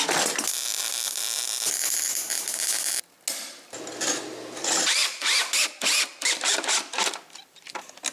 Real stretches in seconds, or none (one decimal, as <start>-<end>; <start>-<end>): 0.0-8.1